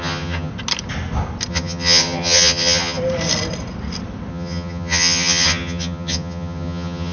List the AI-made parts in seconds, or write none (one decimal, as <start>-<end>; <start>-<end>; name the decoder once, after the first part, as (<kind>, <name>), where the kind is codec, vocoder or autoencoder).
0.0-0.5 (vocoder, HiFi-GAN); 1.5-3.0; 4.3-7.1